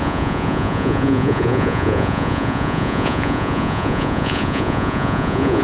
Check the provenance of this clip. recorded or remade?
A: remade